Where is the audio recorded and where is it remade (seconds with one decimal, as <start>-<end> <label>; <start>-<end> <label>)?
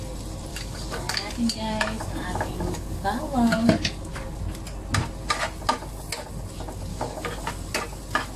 0.0-0.5 recorded; 0.5-4.4 remade; 4.4-6.9 recorded; 6.9-7.5 remade; 7.5-8.4 recorded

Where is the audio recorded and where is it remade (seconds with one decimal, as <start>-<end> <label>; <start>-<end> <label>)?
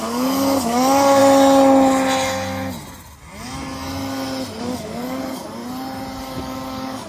0.0-1.2 remade; 1.2-4.6 recorded; 4.6-5.6 remade; 5.6-6.2 recorded; 6.2-7.1 remade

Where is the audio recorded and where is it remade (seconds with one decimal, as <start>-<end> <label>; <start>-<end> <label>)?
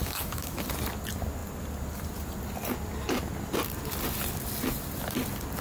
0.0-0.6 remade; 0.6-5.6 recorded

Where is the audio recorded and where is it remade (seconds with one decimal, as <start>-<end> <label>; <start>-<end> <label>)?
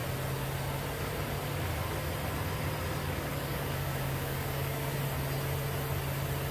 0.0-3.0 recorded; 3.0-5.0 remade; 5.0-6.5 recorded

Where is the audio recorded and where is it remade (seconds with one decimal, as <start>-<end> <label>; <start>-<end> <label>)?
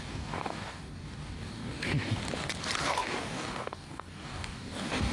0.0-2.2 remade; 2.2-2.8 recorded; 2.8-5.1 remade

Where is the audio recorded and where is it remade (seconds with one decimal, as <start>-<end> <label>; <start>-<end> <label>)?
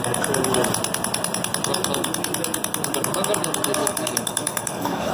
0.0-3.8 recorded; 3.8-5.1 remade